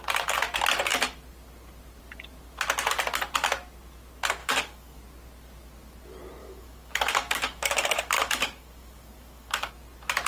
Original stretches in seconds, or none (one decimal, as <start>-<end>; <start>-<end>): 0.0-4.4; 5.0-6.4; 9.7-10.3